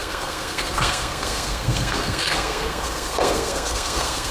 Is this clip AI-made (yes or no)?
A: yes